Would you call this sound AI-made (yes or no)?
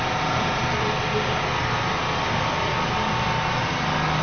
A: no